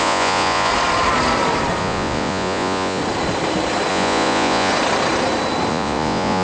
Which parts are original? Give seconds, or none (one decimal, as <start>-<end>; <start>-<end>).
0.7-1.8; 3.0-3.9; 4.7-5.7